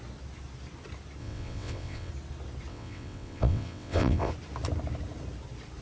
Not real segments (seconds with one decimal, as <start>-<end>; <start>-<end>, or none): 1.2-2.1; 2.7-4.3